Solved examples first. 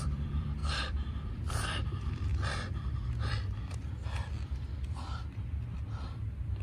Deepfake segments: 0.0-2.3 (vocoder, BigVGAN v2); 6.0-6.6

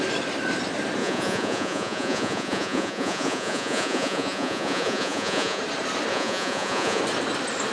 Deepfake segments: 1.0-5.6 (vocoder, Vocos); 6.1-7.0

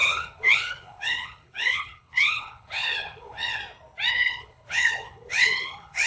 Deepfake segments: 0.0-3.6 (codec, HILCodec); 4.1-6.1

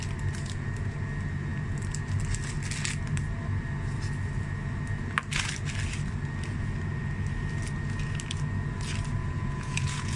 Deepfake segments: 9.2-10.2 (vocoder, Vocos)

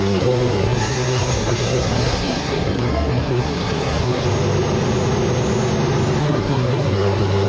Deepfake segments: 0.0-4.2 (codec, SNAC); 6.2-7.5

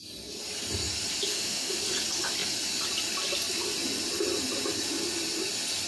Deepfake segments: 1.3-1.8 (autoencoder, DAC-VAE)

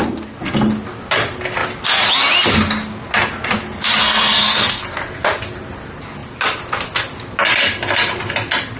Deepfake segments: 4.0-4.8 (codec, SNAC)

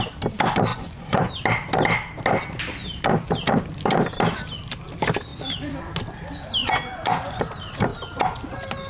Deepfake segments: 0.7-1.3 (vocoder, Vocos); 6.6-7.4